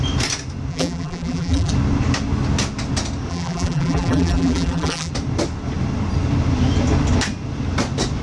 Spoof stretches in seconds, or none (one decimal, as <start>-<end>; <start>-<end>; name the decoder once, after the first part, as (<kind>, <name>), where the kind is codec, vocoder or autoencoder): 0.7-1.7 (vocoder, BigVGAN v2); 3.3-5.1